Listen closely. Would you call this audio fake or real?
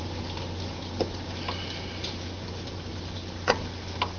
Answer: real